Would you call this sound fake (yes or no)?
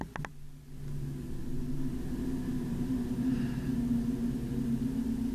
no